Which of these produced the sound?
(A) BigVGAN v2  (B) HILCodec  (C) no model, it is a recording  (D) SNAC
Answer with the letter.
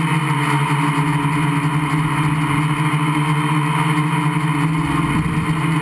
C